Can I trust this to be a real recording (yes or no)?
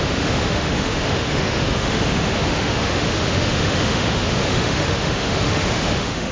no